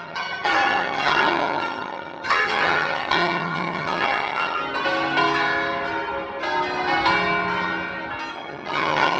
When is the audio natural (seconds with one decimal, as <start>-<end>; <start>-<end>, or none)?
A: 4.6-8.3